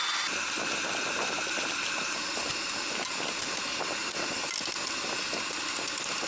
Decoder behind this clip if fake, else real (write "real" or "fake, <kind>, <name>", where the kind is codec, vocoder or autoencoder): real